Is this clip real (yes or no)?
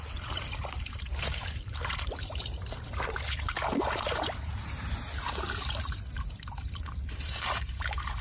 no